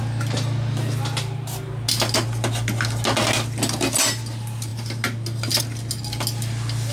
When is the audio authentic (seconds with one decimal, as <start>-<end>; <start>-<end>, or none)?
0.0-6.9